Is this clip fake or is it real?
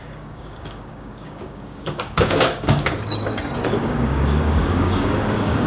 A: fake